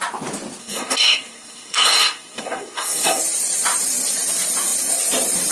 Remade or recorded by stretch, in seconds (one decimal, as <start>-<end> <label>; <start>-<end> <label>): 0.0-0.6 recorded; 0.6-3.2 remade; 3.2-5.5 recorded